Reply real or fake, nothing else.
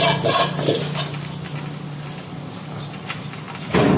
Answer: real